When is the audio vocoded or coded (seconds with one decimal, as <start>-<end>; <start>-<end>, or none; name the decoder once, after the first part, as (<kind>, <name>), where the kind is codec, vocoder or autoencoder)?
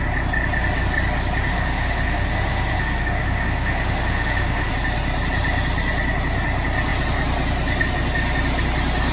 1.5-4.7 (autoencoder, DAC-VAE)